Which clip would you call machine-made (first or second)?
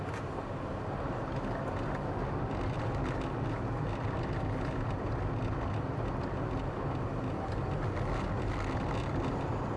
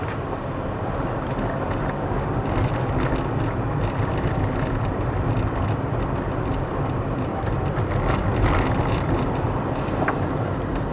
second